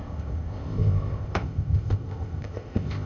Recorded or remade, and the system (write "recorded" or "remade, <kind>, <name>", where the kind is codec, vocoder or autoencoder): remade, codec, ZipCodec